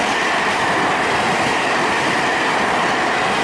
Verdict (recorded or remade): recorded